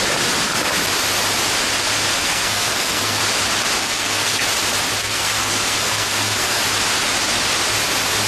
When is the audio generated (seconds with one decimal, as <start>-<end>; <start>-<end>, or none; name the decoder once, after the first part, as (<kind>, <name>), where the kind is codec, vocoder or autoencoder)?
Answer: 2.2-3.2 (codec, SNAC); 3.8-4.4; 5.0-6.6